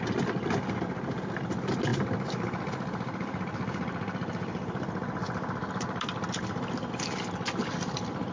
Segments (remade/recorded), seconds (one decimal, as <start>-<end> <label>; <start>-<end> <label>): 0.0-8.3 recorded